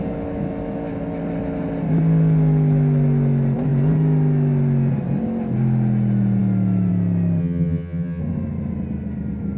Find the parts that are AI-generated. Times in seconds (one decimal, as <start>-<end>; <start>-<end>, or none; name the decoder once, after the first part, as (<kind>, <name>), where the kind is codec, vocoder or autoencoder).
7.4-8.2 (vocoder, HiFi-GAN)